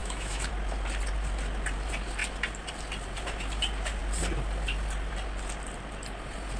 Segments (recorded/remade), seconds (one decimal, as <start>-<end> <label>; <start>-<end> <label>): 0.0-0.5 remade; 0.5-6.6 recorded